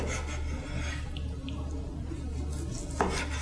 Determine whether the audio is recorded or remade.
recorded